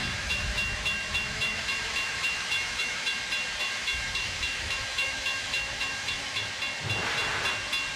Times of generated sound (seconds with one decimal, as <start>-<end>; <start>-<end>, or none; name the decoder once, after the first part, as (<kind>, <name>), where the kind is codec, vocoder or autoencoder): 0.0-3.2 (autoencoder, DAC-VAE); 3.6-6.5